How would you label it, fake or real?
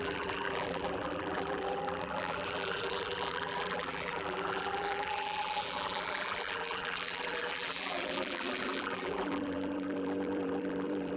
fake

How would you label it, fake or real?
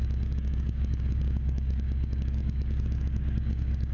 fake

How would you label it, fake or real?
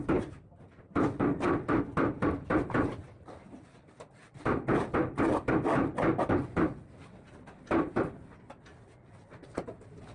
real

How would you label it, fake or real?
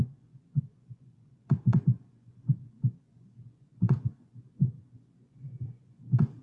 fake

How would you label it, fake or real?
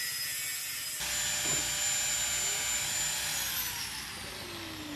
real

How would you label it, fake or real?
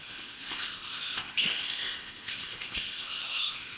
fake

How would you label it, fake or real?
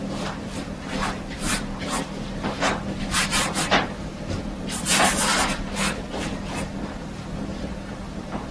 fake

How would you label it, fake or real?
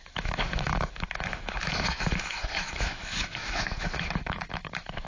fake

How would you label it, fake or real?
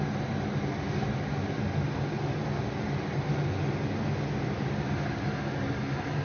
real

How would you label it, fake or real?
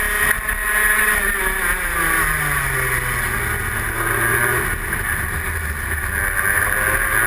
real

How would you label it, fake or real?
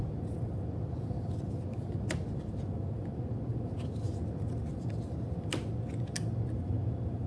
real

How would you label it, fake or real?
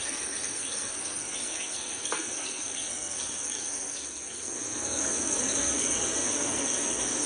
fake